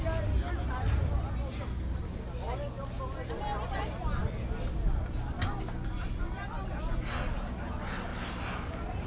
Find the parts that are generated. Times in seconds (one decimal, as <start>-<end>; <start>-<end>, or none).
none